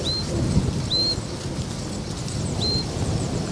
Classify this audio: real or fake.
real